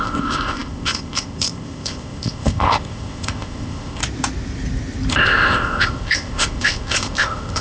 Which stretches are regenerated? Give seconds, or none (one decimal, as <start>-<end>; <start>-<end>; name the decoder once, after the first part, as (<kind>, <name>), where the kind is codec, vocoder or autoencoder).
0.0-4.0 (codec, ZipCodec); 5.1-7.6